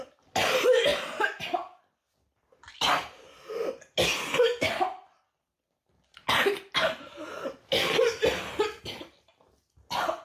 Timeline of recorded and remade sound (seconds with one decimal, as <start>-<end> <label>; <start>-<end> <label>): 0.0-10.2 recorded